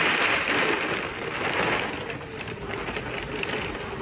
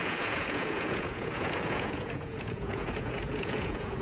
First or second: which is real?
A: first